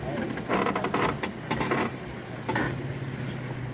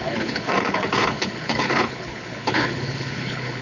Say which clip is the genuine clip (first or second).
first